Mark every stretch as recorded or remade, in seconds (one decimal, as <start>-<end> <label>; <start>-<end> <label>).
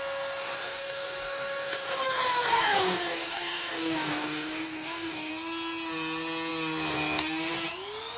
0.0-0.4 recorded; 0.4-5.3 remade; 5.3-8.2 recorded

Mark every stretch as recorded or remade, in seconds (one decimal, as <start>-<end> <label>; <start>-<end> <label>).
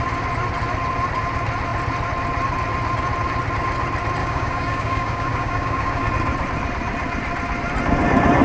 0.0-4.2 recorded; 4.2-6.1 remade; 6.1-8.4 recorded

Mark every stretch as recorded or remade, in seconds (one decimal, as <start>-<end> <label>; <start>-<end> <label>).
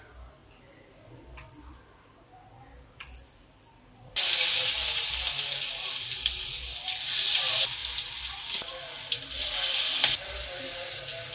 0.0-11.3 recorded